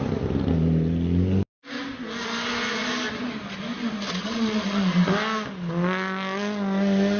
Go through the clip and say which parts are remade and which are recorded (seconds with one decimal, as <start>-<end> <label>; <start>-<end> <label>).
0.0-4.0 recorded; 4.0-5.1 remade; 5.1-7.2 recorded